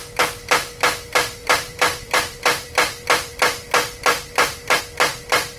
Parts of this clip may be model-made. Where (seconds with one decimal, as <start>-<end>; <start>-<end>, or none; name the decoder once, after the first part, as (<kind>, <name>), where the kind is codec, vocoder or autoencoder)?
1.4-4.8 (vocoder, BigVGAN v2)